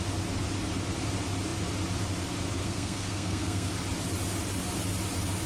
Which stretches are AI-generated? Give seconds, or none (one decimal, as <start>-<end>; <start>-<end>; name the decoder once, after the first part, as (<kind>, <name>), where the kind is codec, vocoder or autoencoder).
2.6-3.7 (codec, SNAC)